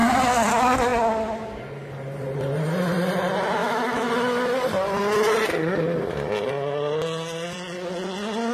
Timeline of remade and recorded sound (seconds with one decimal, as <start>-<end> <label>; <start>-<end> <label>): 0.0-3.6 recorded; 3.6-4.1 remade; 4.1-8.5 recorded